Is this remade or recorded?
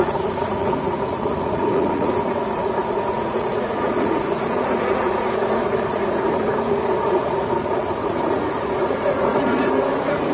remade